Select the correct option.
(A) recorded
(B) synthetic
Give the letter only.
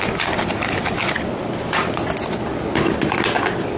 A